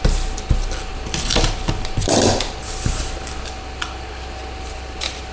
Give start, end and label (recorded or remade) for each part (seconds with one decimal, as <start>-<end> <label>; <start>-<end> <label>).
0.0-5.3 recorded